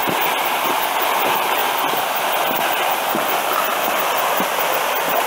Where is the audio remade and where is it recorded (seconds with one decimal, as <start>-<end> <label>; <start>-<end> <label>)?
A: 0.0-1.6 recorded; 1.6-2.3 remade; 2.3-5.3 recorded